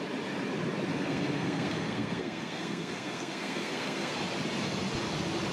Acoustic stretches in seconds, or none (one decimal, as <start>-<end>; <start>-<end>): 0.0-0.9; 4.2-5.5

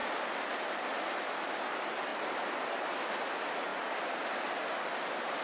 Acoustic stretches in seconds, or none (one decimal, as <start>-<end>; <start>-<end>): 0.0-5.4

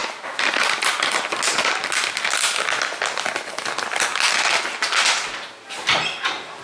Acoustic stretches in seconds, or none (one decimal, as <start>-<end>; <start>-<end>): 1.2-6.6